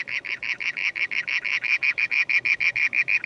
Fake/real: fake